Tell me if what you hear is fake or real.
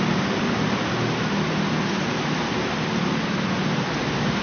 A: real